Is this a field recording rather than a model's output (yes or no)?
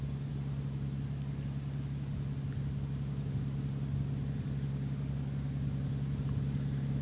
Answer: yes